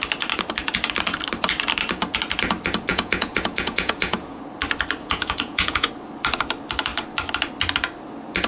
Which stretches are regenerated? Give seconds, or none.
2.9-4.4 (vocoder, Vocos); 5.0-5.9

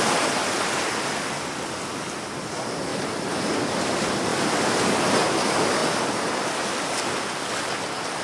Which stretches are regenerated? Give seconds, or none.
none

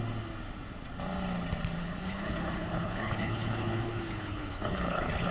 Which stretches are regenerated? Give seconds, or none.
1.8-5.3 (codec, HILCodec)

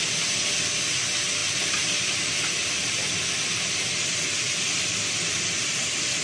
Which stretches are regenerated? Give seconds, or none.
0.0-6.2 (vocoder, BigVGAN v2)

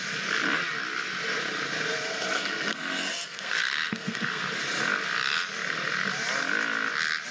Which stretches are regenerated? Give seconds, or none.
2.1-4.4 (codec, SNAC)

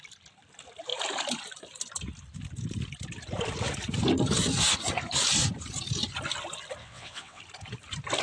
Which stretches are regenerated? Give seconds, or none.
6.8-7.4 (vocoder, WaveNeXt)

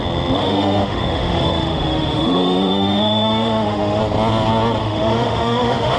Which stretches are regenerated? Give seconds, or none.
0.4-4.0 (autoencoder, DAC-VAE); 4.8-6.0